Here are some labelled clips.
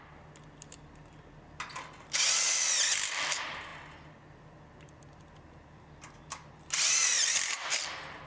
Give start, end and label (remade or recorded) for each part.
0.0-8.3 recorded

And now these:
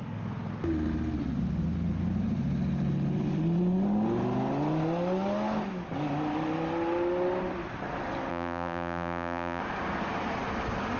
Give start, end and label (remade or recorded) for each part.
0.0-8.3 recorded; 8.3-9.6 remade; 9.6-11.0 recorded

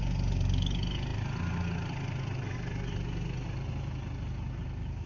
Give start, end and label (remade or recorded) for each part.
0.0-5.1 recorded

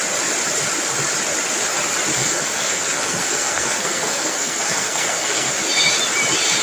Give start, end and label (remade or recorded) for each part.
0.0-2.1 recorded; 2.1-5.5 remade; 5.5-6.6 recorded

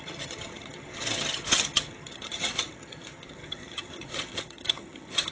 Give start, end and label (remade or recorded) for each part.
0.0-5.3 remade

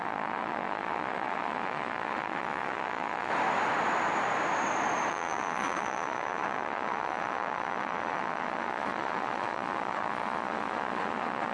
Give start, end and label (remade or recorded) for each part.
0.0-3.3 remade; 3.3-5.1 recorded; 5.1-11.5 remade

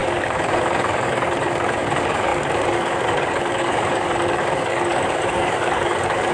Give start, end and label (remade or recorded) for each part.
0.0-6.3 remade

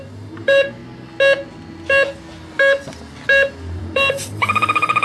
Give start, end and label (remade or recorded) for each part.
0.0-0.8 remade; 0.8-3.8 recorded; 3.8-5.0 remade